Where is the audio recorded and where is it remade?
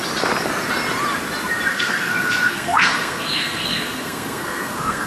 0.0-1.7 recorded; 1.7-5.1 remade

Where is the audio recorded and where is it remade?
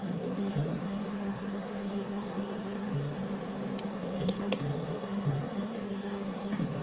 0.0-3.2 remade; 3.2-3.8 recorded; 3.8-6.8 remade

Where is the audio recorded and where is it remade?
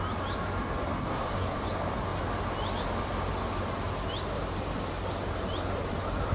0.0-1.0 recorded; 1.0-1.6 remade; 1.6-6.3 recorded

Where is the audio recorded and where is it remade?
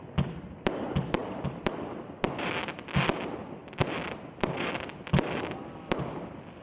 0.0-6.6 recorded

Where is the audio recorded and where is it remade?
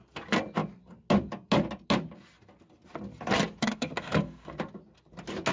0.0-3.6 recorded; 3.6-4.5 remade; 4.5-5.5 recorded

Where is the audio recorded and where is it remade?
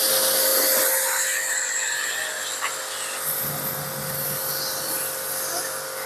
0.0-6.1 recorded